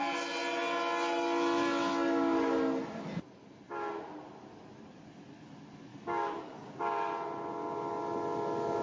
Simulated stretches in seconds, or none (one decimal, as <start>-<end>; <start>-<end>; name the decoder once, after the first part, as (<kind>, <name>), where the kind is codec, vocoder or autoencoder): 5.9-6.7 (codec, DAC)